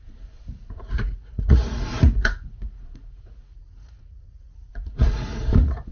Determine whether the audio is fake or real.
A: fake